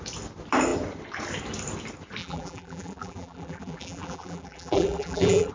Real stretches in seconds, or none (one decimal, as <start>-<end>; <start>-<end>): 0.0-2.2